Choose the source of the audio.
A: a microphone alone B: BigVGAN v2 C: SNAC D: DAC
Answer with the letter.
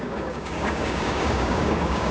D